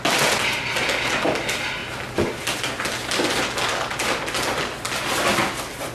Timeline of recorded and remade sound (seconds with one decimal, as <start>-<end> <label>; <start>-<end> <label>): 0.0-5.3 recorded; 5.3-5.9 remade